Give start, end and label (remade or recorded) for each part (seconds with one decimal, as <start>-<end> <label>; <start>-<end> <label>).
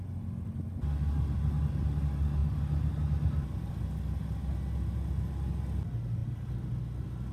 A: 0.0-7.3 recorded